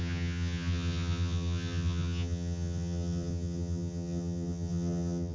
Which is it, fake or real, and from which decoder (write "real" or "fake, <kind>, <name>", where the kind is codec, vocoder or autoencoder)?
fake, vocoder, HiFi-GAN